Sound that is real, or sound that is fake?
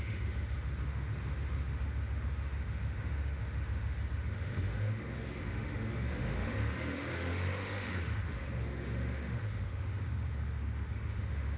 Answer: fake